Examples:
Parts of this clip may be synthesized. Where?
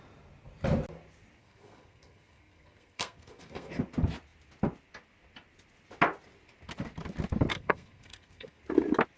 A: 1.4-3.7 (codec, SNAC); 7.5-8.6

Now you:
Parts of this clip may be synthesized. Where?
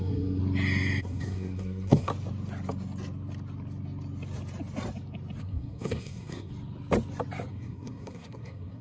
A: 0.0-0.4 (codec, SNAC); 1.0-2.1; 5.4-6.5; 7.5-8.8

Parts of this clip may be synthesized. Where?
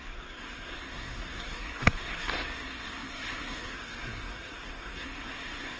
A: 0.0-5.8 (codec, SNAC)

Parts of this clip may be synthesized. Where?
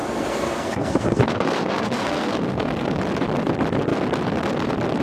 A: 0.0-3.0 (codec, SNAC)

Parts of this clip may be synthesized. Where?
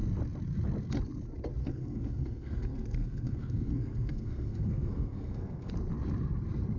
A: 1.6-5.7 (codec, SNAC)